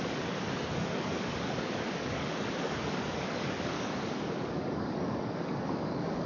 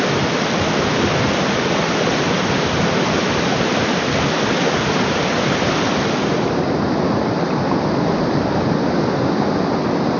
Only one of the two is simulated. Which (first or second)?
first